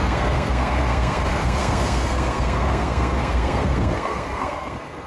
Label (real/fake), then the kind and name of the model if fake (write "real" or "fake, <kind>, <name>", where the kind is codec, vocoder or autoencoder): fake, codec, SNAC